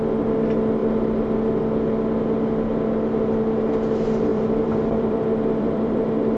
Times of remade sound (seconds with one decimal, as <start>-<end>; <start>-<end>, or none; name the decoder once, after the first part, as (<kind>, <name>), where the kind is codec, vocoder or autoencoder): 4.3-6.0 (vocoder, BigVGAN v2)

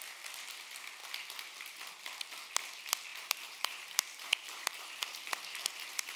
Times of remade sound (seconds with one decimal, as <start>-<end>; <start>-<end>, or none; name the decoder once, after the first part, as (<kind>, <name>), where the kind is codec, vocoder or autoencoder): 3.1-5.2 (vocoder, BigVGAN v2)

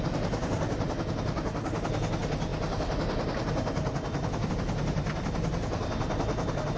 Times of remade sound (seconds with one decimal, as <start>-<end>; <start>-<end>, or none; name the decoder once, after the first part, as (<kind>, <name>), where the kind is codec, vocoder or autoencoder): none

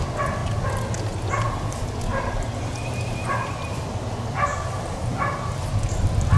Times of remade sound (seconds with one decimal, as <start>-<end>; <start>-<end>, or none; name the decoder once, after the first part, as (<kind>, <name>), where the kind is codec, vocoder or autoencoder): 2.1-3.5 (vocoder, BigVGAN v2); 4.5-5.6

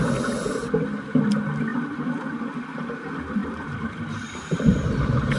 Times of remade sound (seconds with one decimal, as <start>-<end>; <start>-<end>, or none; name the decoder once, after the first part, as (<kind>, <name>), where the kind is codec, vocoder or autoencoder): 1.7-2.2 (vocoder, BigVGAN v2); 3.4-4.8

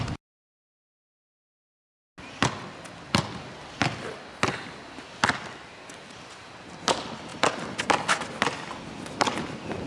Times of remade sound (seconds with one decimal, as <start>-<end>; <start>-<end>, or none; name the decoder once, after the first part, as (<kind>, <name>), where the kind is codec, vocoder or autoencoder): none